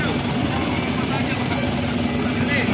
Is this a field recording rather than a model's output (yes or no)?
yes